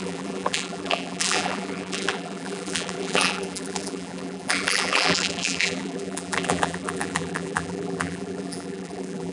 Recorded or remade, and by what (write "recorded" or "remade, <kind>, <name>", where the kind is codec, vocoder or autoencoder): remade, vocoder, BigVGAN v2